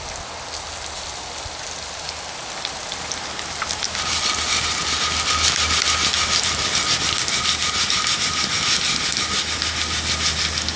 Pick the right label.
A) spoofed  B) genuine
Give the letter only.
B